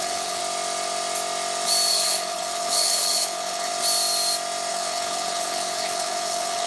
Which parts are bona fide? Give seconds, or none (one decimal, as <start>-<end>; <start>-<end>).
0.4-1.9; 3.7-4.7